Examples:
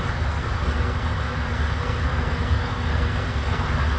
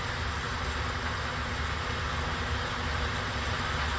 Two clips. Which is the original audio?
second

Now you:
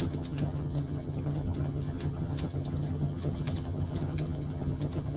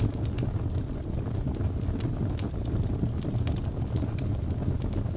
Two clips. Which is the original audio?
second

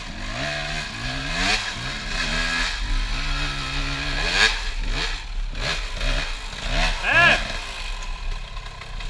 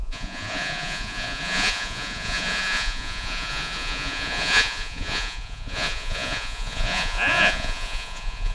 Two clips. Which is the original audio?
first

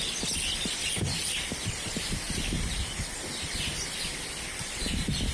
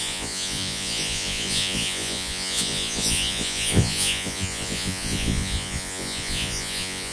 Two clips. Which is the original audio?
first